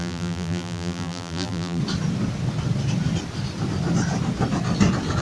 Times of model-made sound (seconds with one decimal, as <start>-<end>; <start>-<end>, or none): 0.0-1.8